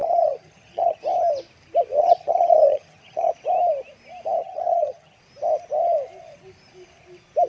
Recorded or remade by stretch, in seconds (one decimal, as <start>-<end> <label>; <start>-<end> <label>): 0.0-1.0 remade; 1.0-2.0 recorded; 2.0-3.3 remade; 3.3-4.4 recorded; 4.4-5.2 remade; 5.2-7.5 recorded